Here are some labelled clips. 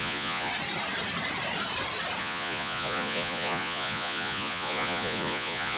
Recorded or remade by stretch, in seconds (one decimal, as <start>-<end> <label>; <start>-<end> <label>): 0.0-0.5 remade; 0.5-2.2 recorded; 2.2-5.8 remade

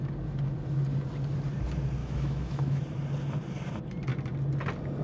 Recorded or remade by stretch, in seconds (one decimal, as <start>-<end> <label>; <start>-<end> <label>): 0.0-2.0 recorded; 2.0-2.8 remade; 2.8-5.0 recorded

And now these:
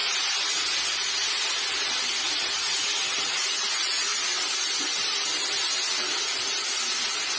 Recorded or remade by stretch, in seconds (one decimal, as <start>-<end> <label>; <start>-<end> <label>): 0.0-7.4 recorded